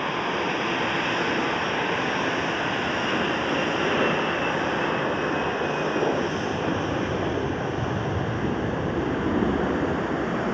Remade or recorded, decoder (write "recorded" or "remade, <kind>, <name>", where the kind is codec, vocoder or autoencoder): recorded